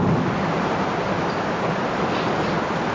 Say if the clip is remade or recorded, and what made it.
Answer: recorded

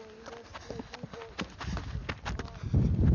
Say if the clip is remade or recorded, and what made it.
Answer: recorded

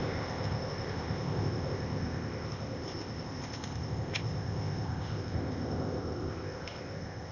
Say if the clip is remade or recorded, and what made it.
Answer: remade, codec, ZipCodec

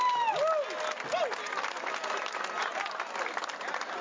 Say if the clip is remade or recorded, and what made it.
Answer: recorded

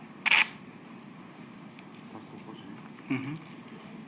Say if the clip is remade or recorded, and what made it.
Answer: recorded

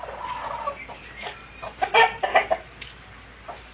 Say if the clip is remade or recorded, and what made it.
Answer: recorded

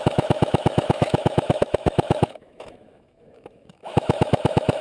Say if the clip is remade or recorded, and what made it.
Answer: remade, autoencoder, DAC-VAE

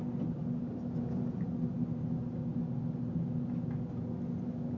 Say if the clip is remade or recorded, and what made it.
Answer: recorded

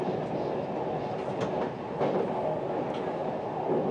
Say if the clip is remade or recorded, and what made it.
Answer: recorded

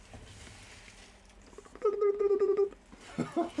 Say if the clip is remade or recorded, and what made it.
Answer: recorded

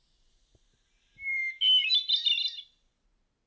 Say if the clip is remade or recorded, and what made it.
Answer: recorded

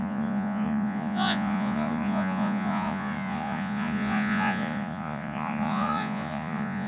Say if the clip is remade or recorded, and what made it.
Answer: remade, vocoder, Vocos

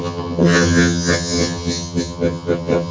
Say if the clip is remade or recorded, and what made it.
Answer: remade, vocoder, HiFi-GAN